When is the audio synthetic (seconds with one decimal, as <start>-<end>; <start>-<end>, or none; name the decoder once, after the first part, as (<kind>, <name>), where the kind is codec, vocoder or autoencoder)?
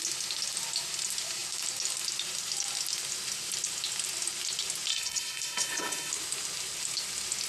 4.9-6.1 (codec, HILCodec)